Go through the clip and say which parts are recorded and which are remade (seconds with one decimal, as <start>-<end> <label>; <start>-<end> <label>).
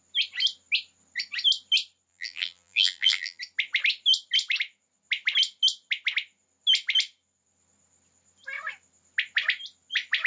0.0-2.1 recorded; 2.1-3.4 remade; 3.4-10.3 recorded